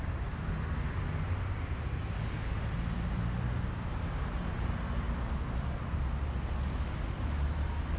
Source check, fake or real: real